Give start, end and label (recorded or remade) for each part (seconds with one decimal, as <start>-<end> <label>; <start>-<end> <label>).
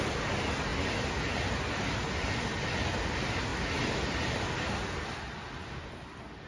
0.0-6.5 recorded